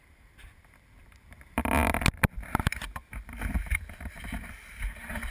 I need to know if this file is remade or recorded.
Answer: remade